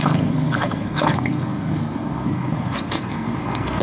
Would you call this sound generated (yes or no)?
yes